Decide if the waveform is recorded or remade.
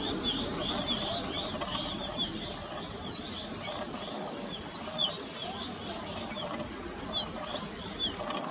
recorded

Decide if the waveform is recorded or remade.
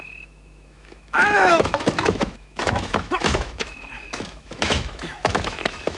remade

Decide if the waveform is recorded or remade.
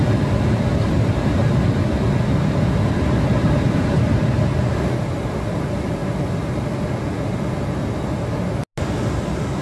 recorded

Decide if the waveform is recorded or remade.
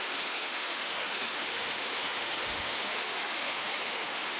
remade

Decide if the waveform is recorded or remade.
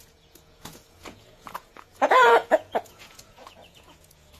remade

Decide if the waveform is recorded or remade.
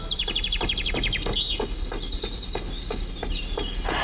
recorded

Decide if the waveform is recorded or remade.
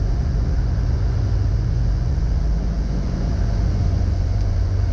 remade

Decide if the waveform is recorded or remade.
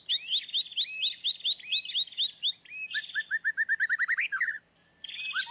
recorded